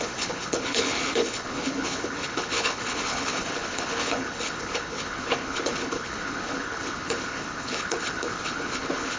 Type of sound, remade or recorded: remade